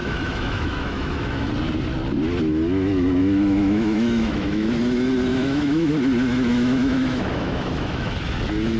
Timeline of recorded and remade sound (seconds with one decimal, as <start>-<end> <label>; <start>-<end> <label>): 0.0-1.5 remade; 1.5-3.2 recorded; 3.2-4.7 remade; 4.7-5.3 recorded; 5.3-5.9 remade; 5.9-6.5 recorded; 6.5-8.1 remade; 8.1-8.8 recorded